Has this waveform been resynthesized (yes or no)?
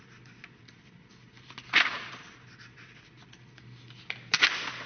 no